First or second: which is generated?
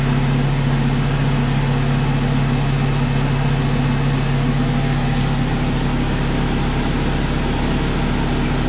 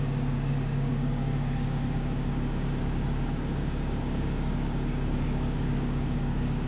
second